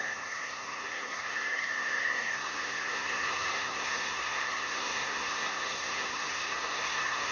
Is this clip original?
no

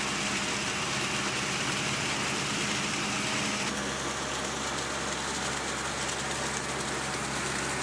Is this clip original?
yes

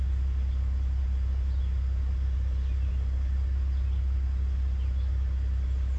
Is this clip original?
yes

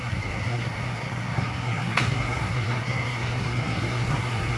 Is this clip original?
no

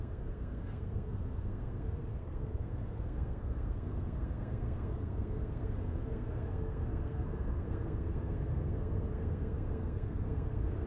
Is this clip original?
no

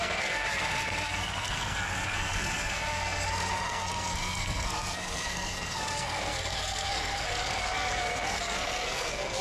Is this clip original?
no